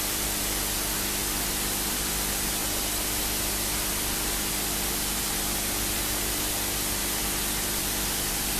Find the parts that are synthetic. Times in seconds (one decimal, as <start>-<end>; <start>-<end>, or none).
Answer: 0.0-2.6; 7.8-8.6